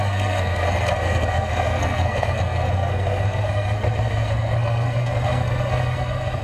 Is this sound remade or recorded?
remade